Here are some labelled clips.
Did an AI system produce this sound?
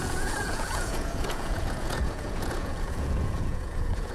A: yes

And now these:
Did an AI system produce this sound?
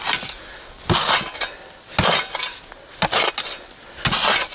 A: no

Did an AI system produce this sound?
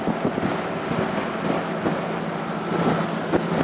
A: no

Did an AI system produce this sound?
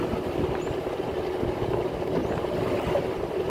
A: no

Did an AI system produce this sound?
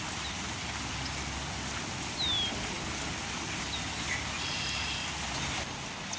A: no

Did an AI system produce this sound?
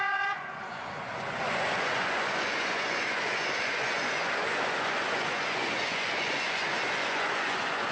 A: yes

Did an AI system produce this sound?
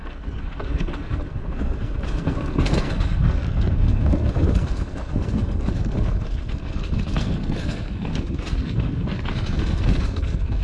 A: yes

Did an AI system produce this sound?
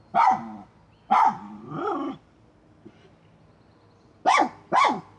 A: no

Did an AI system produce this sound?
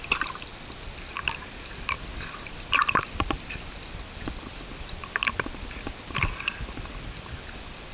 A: no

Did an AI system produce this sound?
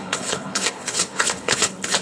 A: yes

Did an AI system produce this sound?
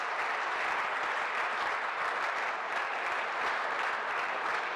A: no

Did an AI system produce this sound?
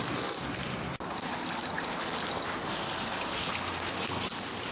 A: no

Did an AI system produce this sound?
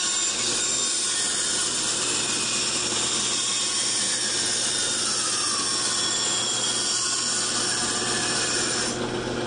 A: no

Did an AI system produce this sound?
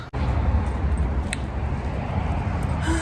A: no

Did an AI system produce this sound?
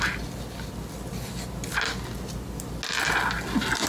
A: no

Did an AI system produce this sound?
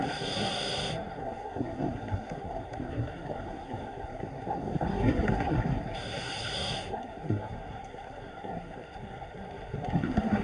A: yes